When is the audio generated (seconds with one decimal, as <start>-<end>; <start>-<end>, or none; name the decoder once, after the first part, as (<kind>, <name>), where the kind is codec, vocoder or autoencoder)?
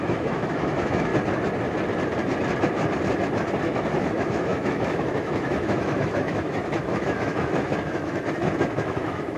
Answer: 0.0-1.1 (autoencoder, DAC-VAE); 3.6-9.4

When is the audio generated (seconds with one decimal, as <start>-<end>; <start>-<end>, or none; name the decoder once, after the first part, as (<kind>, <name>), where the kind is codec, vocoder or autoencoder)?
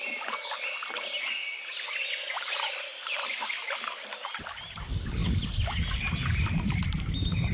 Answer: 2.9-3.6 (vocoder, BigVGAN v2); 4.1-4.7